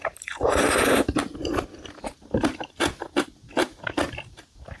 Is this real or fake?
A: real